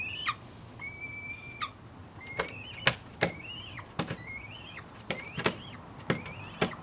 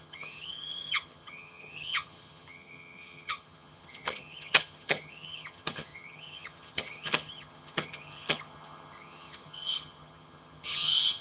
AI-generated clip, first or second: second